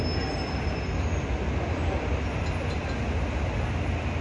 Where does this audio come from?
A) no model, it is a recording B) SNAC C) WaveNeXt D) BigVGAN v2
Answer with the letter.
A